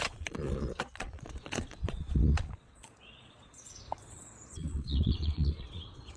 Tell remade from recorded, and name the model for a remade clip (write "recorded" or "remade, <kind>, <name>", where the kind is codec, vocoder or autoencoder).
remade, vocoder, Vocos